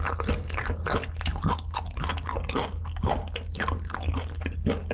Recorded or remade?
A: recorded